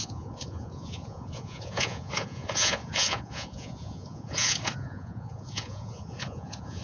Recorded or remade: remade